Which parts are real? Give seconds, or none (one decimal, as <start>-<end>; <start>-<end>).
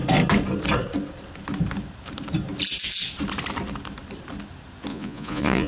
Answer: 0.0-4.9